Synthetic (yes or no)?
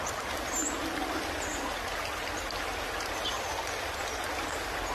no